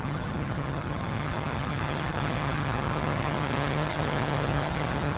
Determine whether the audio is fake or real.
fake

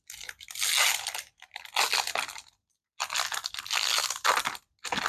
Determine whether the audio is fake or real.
real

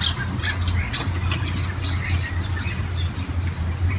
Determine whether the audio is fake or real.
real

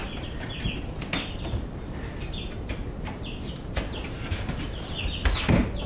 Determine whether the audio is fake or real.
real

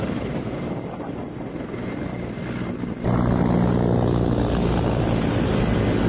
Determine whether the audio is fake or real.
real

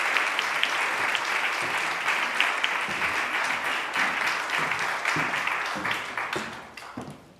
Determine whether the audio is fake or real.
real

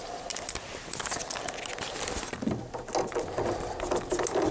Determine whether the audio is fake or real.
real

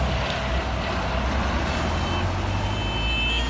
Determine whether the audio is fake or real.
real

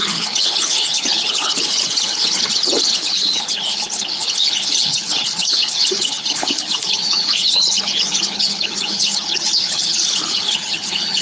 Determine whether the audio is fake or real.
fake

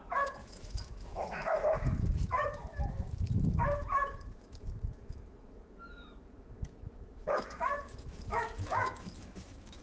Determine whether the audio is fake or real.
fake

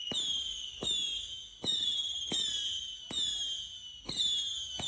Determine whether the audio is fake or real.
real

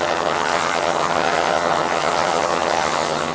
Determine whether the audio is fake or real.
fake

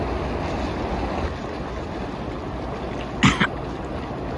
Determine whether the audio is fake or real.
real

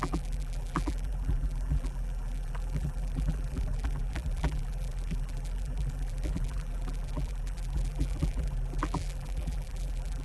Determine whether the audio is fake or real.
fake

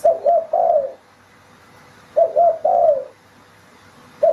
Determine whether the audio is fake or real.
real